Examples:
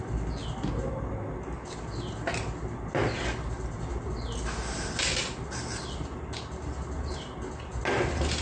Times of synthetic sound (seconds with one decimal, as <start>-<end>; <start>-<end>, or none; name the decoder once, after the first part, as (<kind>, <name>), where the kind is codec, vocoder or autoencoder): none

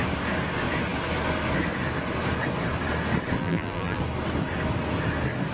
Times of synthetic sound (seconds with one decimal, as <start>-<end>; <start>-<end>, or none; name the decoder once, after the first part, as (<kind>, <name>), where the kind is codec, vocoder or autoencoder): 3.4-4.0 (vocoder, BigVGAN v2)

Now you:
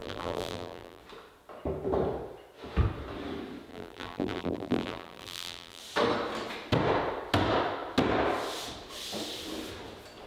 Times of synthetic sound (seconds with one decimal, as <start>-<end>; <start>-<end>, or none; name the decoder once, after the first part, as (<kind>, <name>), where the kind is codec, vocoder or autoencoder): 0.0-1.0 (vocoder, BigVGAN v2); 3.7-5.8

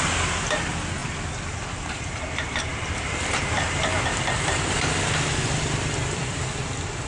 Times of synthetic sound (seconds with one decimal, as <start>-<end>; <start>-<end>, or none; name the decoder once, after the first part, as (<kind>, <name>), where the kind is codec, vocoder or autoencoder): 1.0-1.9 (vocoder, BigVGAN v2); 2.7-6.5

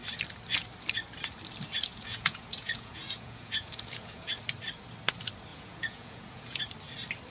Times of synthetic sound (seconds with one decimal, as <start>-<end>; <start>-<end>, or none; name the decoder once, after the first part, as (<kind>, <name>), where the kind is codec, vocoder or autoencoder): 1.9-4.4 (vocoder, Vocos); 5.5-6.6

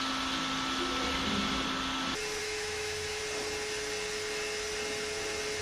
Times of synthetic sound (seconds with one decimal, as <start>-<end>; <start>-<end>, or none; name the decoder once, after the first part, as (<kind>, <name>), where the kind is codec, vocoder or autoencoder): 2.4-3.2 (autoencoder, DAC-VAE)

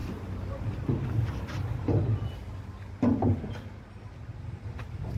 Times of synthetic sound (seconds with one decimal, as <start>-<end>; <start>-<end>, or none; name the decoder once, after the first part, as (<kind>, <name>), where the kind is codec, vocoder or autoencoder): none

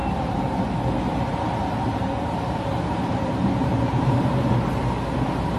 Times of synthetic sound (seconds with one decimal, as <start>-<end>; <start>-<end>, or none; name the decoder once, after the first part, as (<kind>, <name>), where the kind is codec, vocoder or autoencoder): 0.0-0.5 (vocoder, BigVGAN v2); 1.1-4.5